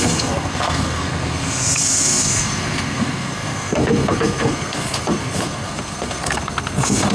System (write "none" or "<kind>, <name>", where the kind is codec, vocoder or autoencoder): codec, SNAC